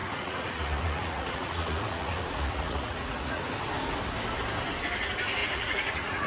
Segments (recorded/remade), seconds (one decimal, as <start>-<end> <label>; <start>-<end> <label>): 0.0-3.4 remade; 3.4-5.4 recorded; 5.4-6.3 remade